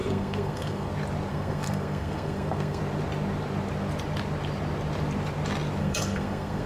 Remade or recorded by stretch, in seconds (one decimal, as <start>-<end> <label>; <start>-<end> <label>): 0.0-0.9 remade; 0.9-1.3 recorded; 1.3-2.8 remade; 2.8-5.8 recorded; 5.8-6.7 remade